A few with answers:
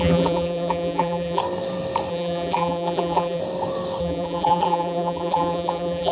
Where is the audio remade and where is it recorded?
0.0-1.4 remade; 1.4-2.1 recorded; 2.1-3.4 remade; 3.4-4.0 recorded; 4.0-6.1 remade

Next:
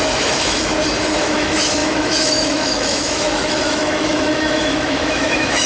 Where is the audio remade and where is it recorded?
0.0-0.7 remade; 0.7-1.2 recorded; 1.2-5.7 remade

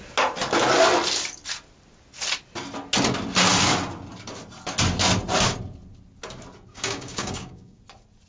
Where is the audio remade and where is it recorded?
0.0-6.7 recorded; 6.7-7.8 remade; 7.8-8.3 recorded